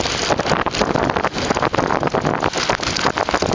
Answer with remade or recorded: recorded